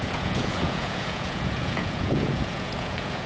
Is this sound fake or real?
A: fake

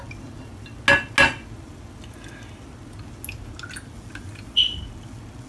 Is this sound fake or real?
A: real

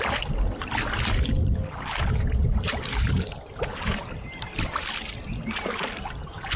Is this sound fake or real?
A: real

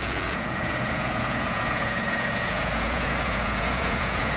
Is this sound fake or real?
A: fake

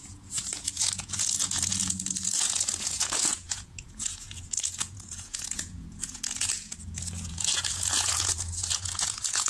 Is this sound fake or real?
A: fake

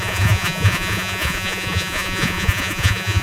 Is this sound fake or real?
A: fake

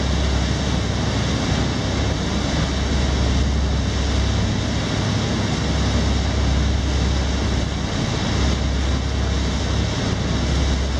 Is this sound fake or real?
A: real